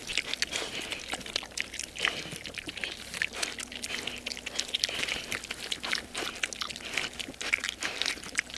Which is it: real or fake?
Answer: real